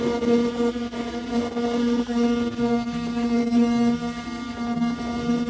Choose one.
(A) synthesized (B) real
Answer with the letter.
B